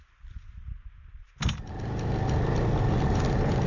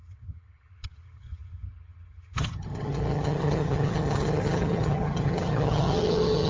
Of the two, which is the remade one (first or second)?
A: second